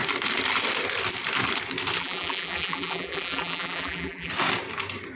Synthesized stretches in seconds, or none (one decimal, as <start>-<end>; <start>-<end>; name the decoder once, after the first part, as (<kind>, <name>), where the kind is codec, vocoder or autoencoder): 2.0-4.3 (vocoder, BigVGAN v2)